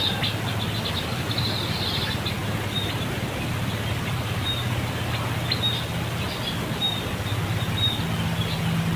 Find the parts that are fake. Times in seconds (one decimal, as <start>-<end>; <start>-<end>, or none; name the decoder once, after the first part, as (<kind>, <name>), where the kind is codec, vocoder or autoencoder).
none